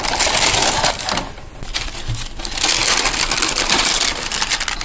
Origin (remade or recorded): recorded